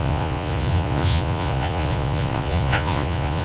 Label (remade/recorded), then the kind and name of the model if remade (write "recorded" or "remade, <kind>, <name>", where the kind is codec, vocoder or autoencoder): remade, vocoder, Vocos